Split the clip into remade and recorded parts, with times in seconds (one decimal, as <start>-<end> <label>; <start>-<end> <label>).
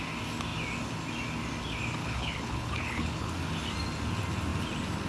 0.0-2.0 recorded; 2.0-3.3 remade; 3.3-5.1 recorded